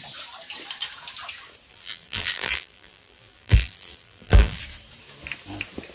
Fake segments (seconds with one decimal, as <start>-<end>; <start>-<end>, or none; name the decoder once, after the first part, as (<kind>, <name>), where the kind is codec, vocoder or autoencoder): 1.7-4.6 (vocoder, BigVGAN v2)